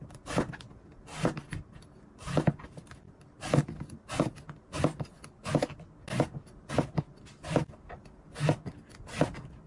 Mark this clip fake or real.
real